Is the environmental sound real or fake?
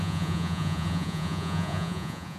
fake